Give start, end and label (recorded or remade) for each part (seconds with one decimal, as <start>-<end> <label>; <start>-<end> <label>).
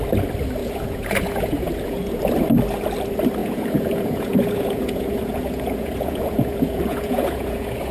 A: 0.0-0.6 recorded; 0.6-2.2 remade; 2.2-3.4 recorded; 3.4-7.9 remade